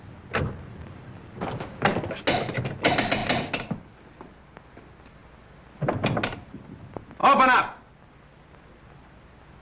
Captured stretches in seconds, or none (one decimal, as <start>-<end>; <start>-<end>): 0.0-9.6